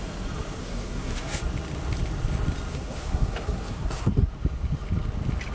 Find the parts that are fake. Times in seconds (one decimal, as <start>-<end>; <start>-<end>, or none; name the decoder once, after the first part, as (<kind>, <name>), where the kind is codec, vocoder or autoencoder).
0.6-1.4 (codec, SNAC); 2.7-4.3